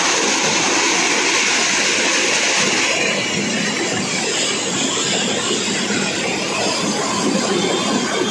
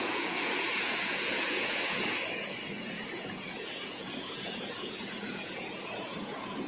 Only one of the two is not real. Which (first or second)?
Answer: second